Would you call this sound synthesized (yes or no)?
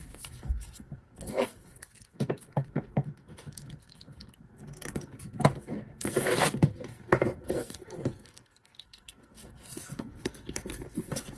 yes